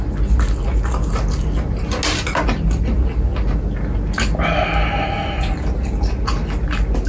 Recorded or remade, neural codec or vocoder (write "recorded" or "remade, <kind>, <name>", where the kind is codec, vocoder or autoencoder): recorded